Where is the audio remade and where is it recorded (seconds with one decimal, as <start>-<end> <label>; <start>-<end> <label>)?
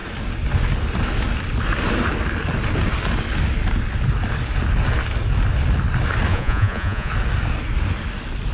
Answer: 0.0-6.3 recorded; 6.3-7.1 remade; 7.1-8.5 recorded